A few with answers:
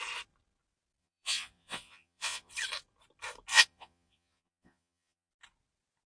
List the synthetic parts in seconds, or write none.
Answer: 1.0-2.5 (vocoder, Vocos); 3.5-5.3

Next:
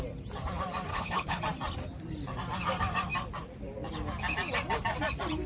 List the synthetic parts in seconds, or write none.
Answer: 0.9-1.4 (codec, HILCodec)